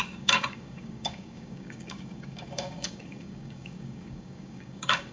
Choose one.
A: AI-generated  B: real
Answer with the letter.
A